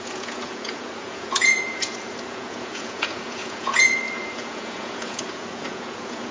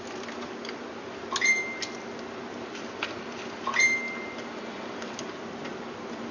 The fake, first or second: first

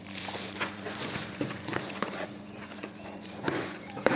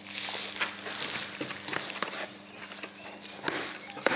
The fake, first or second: first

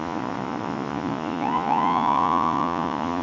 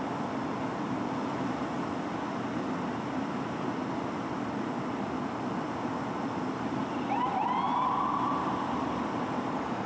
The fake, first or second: first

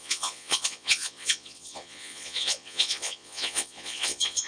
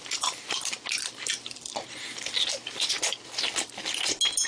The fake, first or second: first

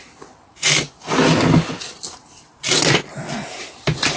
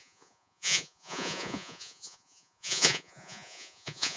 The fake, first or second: second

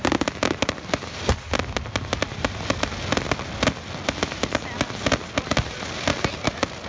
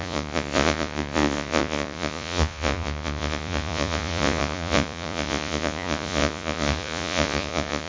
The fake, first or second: second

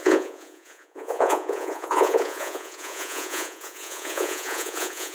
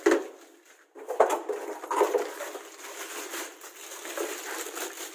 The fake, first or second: first